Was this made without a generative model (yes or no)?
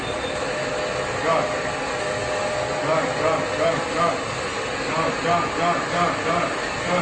yes